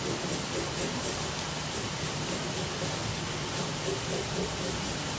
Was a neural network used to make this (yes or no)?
no